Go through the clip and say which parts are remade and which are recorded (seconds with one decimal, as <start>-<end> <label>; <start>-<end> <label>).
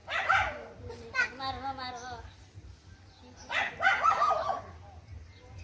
0.0-5.6 recorded